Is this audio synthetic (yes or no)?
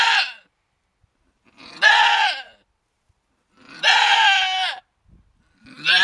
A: no